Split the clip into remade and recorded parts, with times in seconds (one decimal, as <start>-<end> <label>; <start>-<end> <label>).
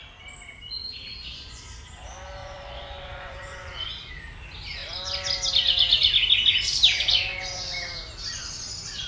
0.0-0.8 recorded; 0.8-1.6 remade; 1.6-2.4 recorded; 2.4-4.1 remade; 4.1-9.1 recorded